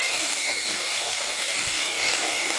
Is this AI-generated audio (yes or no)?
yes